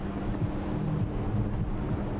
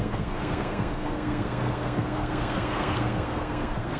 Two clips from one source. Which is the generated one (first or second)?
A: second